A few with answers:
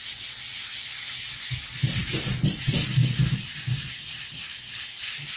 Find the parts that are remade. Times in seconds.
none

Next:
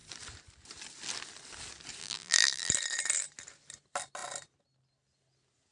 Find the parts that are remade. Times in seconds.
2.0-2.7 (vocoder, BigVGAN v2)

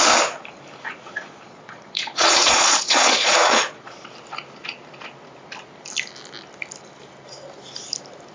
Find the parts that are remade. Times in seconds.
0.9-4.1 (vocoder, Vocos)

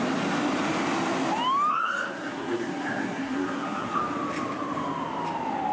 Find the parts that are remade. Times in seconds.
1.7-4.0 (codec, SNAC)

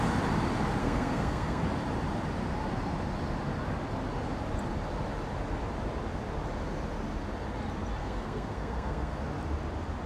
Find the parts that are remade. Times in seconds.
0.8-1.6 (codec, SNAC); 8.0-9.2